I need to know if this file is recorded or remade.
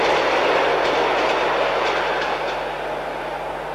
recorded